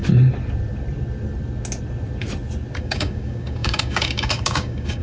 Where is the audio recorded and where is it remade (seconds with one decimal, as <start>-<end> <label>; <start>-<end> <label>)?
0.0-2.8 recorded; 2.8-5.0 remade